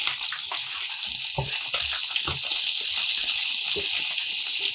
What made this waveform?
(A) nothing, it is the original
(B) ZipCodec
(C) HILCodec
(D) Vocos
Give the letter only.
A